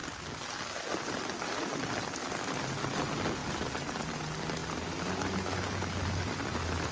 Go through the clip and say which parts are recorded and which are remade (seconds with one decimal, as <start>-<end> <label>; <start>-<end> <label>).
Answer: 0.0-6.9 recorded